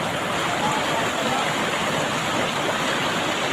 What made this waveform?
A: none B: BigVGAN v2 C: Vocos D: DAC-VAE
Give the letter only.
A